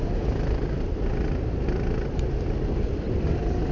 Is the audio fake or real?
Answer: real